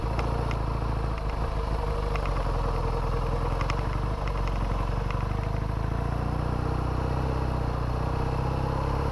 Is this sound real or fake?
real